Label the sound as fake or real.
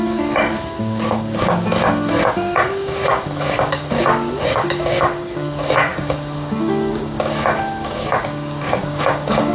fake